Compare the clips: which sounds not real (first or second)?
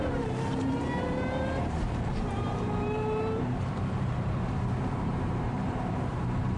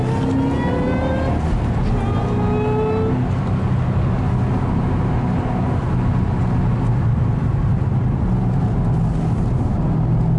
first